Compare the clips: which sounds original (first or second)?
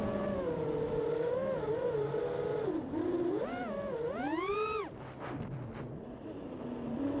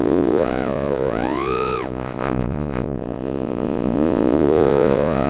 first